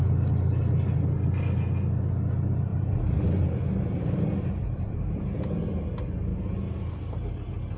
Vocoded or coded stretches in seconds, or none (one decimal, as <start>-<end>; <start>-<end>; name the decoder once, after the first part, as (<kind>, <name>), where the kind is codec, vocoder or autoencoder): 2.7-5.6 (vocoder, BigVGAN v2); 6.3-7.0